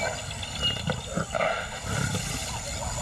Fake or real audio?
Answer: real